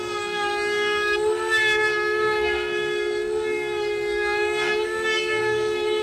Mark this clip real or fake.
fake